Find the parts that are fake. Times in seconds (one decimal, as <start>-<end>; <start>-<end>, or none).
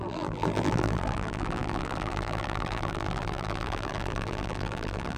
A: 0.0-5.2